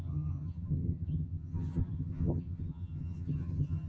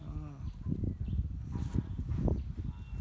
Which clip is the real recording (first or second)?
second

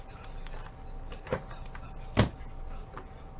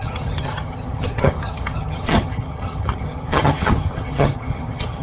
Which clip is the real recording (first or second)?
first